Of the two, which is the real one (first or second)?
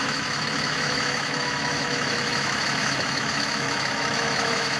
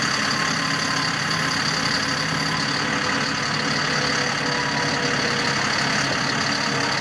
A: second